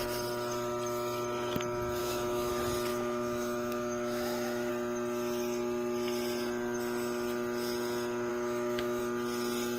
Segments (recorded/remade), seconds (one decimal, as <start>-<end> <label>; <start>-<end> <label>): 0.0-2.0 recorded; 2.0-2.5 remade; 2.5-2.9 recorded; 2.9-4.7 remade; 4.7-8.3 recorded; 8.3-9.0 remade; 9.0-9.8 recorded